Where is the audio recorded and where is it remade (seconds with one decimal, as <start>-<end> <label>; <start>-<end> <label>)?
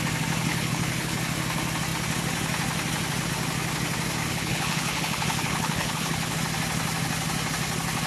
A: 0.0-0.5 recorded; 0.5-1.2 remade; 1.2-4.2 recorded; 4.2-6.4 remade; 6.4-8.1 recorded